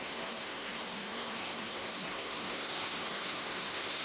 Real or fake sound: fake